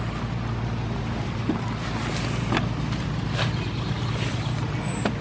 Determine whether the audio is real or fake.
real